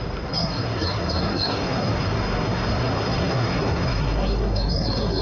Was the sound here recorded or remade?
remade